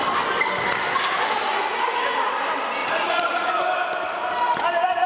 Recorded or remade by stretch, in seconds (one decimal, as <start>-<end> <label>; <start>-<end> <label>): 0.0-1.5 recorded; 1.5-2.3 remade; 2.3-2.8 recorded; 2.8-3.5 remade; 3.5-5.1 recorded